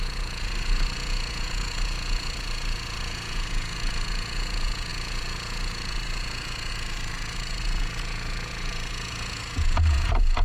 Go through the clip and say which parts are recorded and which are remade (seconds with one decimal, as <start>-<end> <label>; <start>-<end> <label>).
0.0-10.4 remade